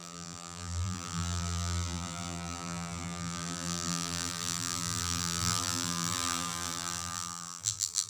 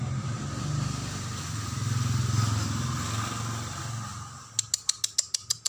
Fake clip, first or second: first